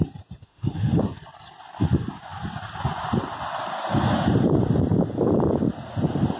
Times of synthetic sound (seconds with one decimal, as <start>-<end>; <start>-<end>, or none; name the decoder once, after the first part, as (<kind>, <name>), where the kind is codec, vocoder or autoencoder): 0.4-1.0 (autoencoder, DAC-VAE)